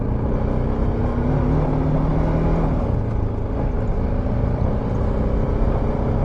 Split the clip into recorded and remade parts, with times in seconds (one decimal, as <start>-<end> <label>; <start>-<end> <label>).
0.0-6.2 recorded

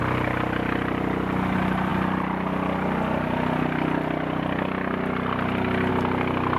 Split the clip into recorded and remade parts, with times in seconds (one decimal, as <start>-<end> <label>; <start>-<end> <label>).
0.0-6.6 recorded

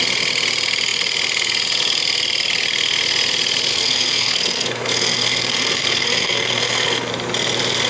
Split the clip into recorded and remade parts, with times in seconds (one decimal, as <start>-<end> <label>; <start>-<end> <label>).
0.0-3.7 recorded; 3.7-7.1 remade; 7.1-7.9 recorded